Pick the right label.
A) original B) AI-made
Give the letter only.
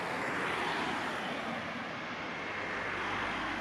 A